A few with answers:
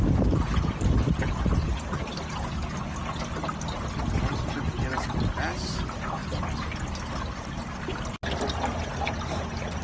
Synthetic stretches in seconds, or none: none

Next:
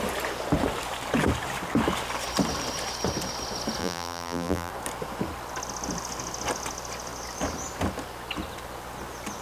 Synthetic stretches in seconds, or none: 3.8-4.7 (vocoder, BigVGAN v2)

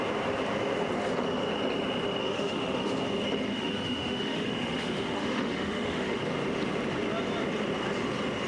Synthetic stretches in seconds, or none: 2.2-2.9 (autoencoder, DAC-VAE); 3.5-6.2

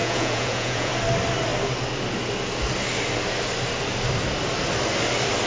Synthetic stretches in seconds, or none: 0.0-0.9 (vocoder, Vocos)